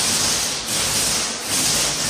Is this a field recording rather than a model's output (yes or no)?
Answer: yes